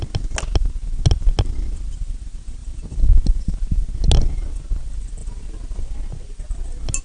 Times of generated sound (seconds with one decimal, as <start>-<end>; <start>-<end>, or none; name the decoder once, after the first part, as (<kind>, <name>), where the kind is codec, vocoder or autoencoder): none